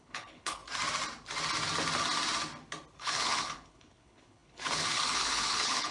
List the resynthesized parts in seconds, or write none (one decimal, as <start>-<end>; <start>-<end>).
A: 0.0-0.6; 3.0-5.9